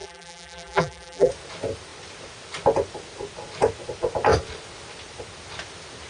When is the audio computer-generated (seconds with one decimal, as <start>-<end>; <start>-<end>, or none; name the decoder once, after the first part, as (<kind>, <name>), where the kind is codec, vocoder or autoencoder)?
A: 0.0-1.3 (vocoder, BigVGAN v2)

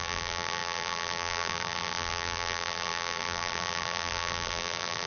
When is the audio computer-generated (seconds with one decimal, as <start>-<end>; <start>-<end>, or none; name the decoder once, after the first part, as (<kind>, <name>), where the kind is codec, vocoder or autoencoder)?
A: 0.0-5.1 (vocoder, BigVGAN v2)

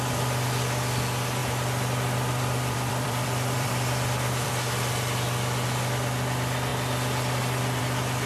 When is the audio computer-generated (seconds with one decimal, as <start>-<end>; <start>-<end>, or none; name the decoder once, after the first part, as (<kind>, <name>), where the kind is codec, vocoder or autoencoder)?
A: 1.4-4.5 (vocoder, BigVGAN v2)

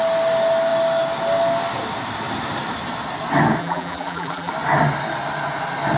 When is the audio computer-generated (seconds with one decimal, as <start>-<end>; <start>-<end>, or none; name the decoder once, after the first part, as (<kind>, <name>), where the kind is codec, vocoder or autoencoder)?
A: 3.6-4.5 (vocoder, BigVGAN v2)

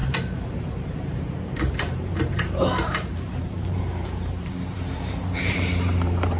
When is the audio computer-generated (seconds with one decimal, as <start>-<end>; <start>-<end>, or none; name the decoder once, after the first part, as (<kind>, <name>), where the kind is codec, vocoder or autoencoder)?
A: 0.0-6.4 (vocoder, BigVGAN v2)

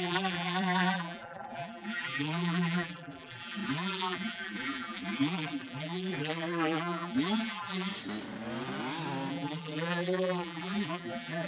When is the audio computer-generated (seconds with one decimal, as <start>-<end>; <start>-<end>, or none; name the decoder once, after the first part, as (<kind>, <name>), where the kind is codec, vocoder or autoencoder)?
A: 0.0-7.9 (vocoder, BigVGAN v2); 9.3-11.5

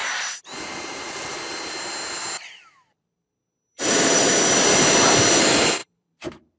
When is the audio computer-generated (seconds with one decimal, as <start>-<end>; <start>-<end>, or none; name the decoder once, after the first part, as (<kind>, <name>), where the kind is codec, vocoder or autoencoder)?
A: 2.9-4.3 (vocoder, BigVGAN v2); 5.8-6.6

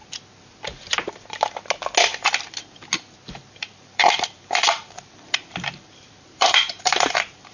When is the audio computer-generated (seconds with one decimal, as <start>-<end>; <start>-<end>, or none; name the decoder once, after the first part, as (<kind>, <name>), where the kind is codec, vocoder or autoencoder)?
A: 3.6-7.5 (vocoder, BigVGAN v2)